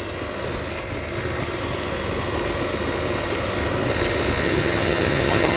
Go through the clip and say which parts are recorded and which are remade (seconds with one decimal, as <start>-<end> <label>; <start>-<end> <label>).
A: 0.0-4.4 recorded; 4.4-5.6 remade